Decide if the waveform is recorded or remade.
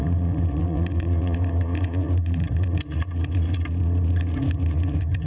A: remade